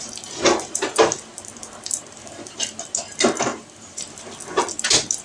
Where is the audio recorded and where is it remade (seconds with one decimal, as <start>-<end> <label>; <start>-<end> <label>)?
0.0-2.2 recorded; 2.2-2.8 remade; 2.8-3.5 recorded; 3.5-4.0 remade; 4.0-5.2 recorded